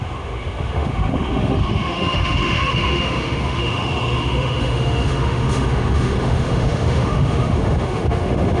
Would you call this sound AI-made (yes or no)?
yes